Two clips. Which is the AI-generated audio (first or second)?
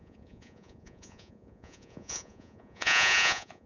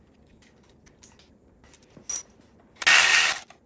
first